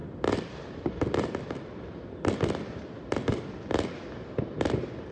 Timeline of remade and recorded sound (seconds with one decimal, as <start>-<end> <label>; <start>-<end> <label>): 0.0-3.1 remade; 3.1-5.1 recorded